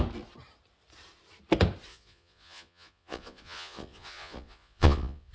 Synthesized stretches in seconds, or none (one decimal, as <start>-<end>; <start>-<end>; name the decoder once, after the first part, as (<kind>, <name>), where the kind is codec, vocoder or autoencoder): 1.9-5.3 (vocoder, Vocos)